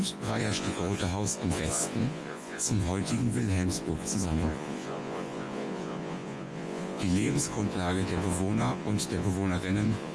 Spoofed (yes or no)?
yes